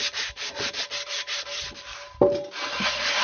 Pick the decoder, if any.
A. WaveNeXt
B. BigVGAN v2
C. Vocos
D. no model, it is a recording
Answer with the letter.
D